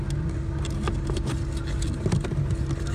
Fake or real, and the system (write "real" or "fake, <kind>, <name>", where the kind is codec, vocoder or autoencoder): real